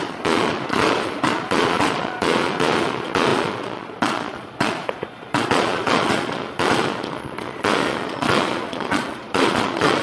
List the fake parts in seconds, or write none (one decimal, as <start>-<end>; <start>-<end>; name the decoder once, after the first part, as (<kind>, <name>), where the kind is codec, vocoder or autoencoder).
0.0-10.0 (vocoder, Vocos)